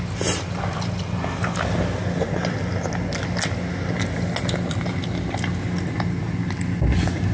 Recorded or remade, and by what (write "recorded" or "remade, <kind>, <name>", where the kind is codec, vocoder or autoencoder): recorded